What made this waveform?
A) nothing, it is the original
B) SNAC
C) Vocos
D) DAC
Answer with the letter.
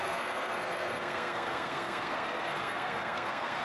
B